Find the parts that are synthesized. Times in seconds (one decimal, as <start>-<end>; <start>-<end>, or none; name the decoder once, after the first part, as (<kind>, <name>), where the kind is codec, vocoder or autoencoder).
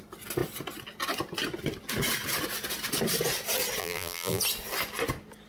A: 3.8-4.4 (vocoder, BigVGAN v2)